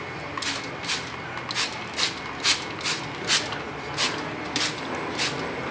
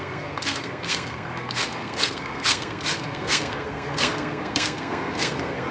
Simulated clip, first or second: second